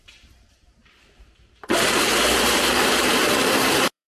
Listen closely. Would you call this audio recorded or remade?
remade